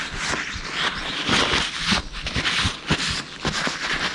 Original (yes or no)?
yes